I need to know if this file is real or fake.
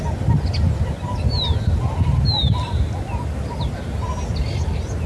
real